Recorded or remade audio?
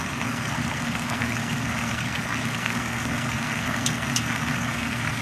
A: remade